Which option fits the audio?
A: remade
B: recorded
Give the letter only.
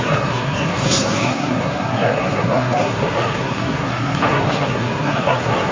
A